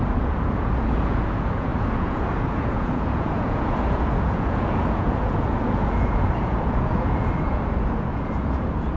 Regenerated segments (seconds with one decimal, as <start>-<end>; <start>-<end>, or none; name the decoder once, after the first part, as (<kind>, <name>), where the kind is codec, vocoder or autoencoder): 0.0-9.0 (vocoder, Vocos)